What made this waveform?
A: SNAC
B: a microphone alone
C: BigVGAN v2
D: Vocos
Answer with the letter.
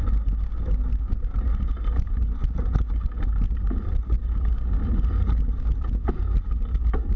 B